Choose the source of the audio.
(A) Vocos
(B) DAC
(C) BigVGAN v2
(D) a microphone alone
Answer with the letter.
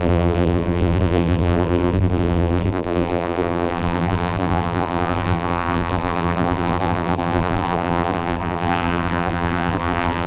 C